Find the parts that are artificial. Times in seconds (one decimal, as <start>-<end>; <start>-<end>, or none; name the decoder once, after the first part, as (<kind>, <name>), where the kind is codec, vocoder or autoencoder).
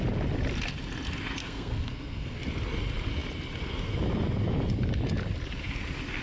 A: 1.4-2.4 (codec, SNAC)